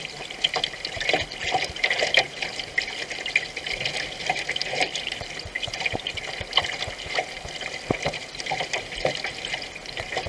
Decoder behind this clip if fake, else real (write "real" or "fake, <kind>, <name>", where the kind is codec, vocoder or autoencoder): real